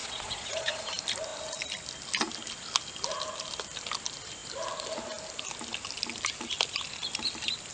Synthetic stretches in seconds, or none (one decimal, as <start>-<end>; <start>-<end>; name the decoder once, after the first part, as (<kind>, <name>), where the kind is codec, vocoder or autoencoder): 0.0-0.8 (vocoder, Vocos)